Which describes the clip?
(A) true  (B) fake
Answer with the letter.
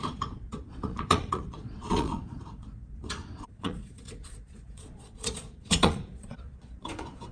B